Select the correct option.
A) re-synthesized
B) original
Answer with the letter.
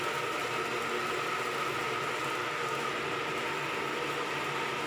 B